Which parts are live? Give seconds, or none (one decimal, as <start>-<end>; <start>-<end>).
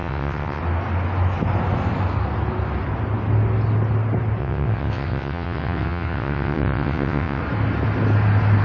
0.6-4.4; 7.4-8.6